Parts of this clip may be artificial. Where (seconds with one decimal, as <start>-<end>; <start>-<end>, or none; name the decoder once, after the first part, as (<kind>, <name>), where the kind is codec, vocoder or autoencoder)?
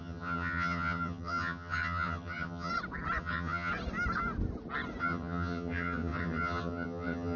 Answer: 0.0-2.7 (vocoder, HiFi-GAN); 3.2-3.7; 5.0-7.4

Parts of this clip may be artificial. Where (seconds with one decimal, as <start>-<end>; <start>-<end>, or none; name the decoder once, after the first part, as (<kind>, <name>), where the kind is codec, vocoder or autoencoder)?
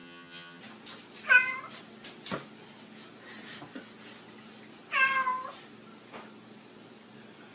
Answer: 0.0-0.6 (vocoder, HiFi-GAN)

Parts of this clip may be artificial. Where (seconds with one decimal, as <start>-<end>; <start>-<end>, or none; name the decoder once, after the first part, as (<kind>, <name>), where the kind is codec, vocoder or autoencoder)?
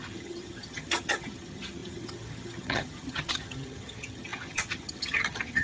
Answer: 0.0-5.6 (vocoder, HiFi-GAN)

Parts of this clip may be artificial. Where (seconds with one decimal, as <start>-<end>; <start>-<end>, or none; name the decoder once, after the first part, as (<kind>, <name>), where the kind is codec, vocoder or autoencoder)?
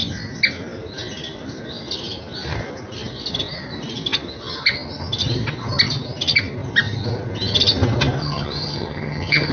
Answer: 8.2-9.5 (vocoder, HiFi-GAN)